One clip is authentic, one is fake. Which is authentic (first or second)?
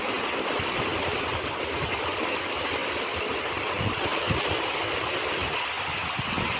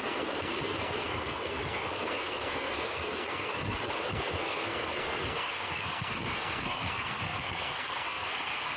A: first